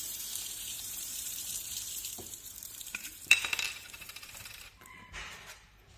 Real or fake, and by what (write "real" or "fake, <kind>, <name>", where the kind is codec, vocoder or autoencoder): fake, vocoder, BigVGAN v2